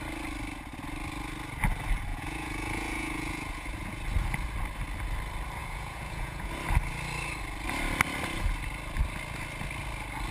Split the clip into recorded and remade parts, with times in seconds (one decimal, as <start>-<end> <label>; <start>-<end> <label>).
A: 0.0-2.1 recorded; 2.1-4.0 remade; 4.0-5.6 recorded; 5.6-6.5 remade; 6.5-10.3 recorded